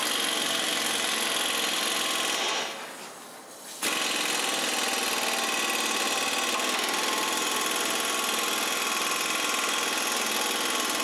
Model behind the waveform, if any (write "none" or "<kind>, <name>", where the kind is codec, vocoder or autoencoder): none